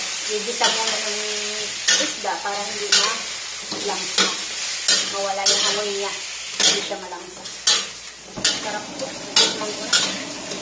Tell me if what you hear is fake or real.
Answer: real